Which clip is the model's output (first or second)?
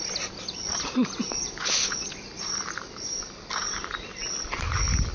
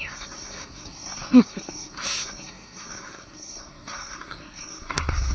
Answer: second